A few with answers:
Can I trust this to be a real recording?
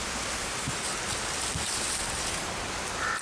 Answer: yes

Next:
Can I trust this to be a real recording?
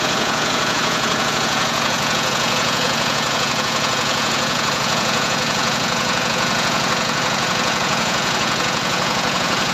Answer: no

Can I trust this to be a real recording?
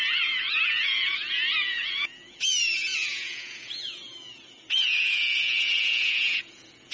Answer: no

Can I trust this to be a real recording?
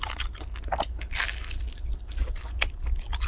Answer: yes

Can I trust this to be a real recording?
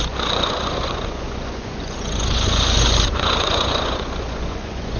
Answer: no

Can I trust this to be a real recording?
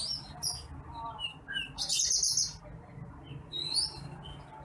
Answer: yes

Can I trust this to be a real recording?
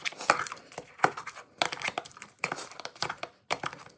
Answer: yes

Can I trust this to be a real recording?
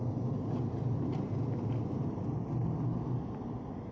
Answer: yes